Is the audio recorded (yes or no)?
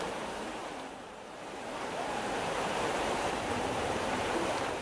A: no